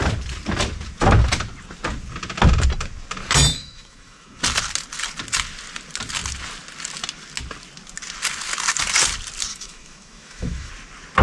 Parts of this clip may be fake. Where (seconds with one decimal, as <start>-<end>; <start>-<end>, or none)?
3.5-4.4; 9.5-10.7

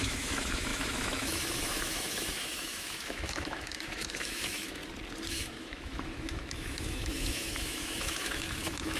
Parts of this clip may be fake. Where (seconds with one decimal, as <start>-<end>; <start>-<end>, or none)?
0.0-4.8; 5.3-9.0